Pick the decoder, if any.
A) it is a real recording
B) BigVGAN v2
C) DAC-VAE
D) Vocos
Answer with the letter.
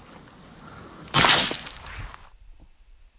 A